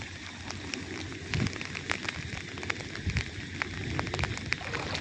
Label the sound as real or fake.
real